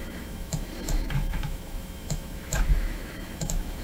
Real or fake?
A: fake